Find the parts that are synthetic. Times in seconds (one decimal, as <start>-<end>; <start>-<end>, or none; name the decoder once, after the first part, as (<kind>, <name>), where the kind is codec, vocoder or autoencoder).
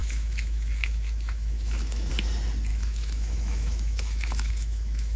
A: 0.0-2.1 (autoencoder, DAC-VAE); 2.7-5.2